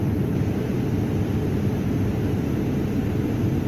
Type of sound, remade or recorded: recorded